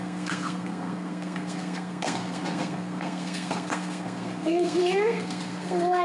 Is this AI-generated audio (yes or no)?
yes